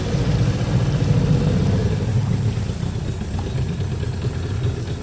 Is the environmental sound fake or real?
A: real